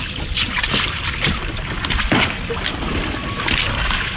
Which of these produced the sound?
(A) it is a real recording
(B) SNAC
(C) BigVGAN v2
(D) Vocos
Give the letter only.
A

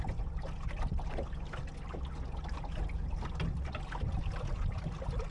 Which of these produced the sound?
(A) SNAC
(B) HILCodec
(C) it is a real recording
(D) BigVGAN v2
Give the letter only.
C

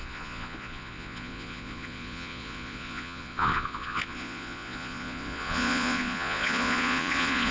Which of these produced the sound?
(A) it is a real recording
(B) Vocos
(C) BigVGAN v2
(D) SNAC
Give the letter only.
B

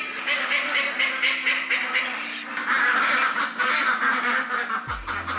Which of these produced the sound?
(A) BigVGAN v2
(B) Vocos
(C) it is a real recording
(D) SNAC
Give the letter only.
C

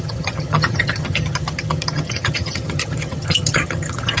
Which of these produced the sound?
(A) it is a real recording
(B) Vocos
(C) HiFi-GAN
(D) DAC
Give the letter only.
C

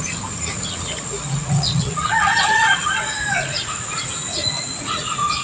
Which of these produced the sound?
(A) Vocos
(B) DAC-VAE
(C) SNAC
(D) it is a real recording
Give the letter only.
A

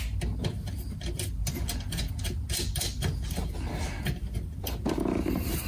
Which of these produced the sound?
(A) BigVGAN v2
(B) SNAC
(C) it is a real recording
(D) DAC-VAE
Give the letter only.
C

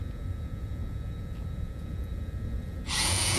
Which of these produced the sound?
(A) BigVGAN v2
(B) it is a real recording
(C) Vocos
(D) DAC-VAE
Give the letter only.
C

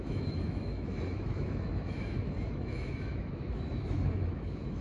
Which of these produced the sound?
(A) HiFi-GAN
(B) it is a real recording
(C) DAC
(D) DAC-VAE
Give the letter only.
D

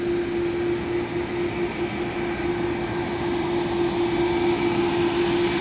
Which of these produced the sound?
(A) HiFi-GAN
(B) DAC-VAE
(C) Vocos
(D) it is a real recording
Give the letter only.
D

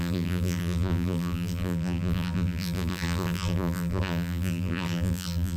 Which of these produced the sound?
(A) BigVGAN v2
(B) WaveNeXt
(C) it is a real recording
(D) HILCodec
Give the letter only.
A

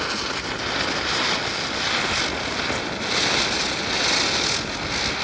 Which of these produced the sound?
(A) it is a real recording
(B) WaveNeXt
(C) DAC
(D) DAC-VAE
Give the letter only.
A